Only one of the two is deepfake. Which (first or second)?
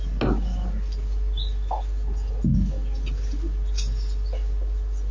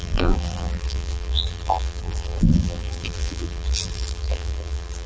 second